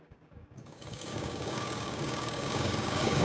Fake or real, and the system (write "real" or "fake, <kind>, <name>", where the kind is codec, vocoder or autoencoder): fake, codec, DAC